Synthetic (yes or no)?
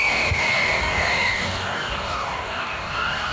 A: yes